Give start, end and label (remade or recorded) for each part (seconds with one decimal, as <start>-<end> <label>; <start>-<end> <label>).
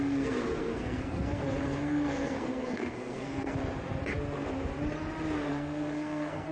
0.0-3.6 remade; 3.6-5.5 recorded; 5.5-6.5 remade